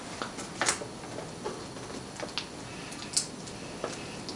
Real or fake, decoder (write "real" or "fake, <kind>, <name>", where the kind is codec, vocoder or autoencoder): real